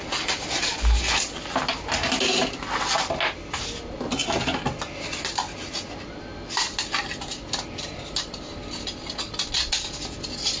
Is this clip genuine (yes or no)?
yes